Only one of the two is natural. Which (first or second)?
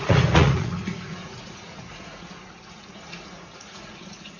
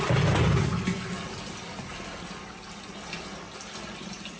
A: second